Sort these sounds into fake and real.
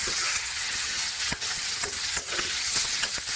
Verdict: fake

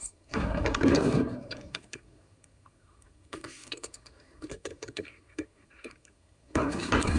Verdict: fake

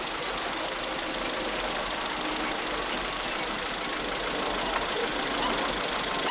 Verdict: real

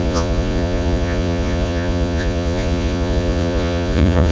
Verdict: fake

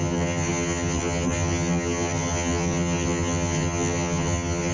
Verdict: fake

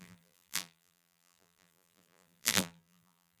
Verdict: fake